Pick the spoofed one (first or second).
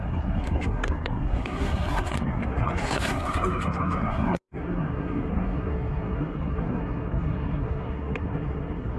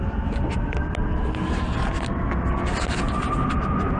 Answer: first